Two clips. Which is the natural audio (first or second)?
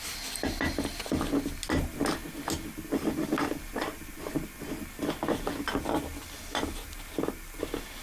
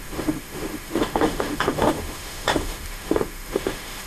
first